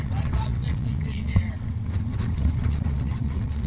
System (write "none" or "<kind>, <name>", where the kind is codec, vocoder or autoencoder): vocoder, WaveNeXt